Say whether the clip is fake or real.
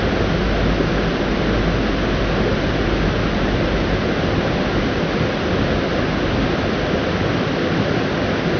real